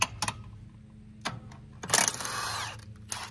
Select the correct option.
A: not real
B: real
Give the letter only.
B